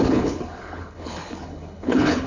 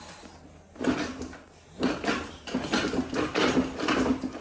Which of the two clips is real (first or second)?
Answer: second